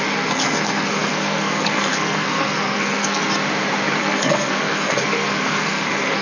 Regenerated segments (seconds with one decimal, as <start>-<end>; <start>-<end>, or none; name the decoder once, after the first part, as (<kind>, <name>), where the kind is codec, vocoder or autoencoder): 0.0-3.2 (codec, SNAC); 4.0-6.2